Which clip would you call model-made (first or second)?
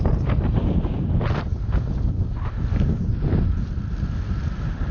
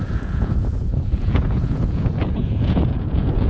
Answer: second